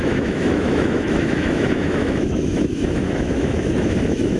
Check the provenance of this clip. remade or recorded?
remade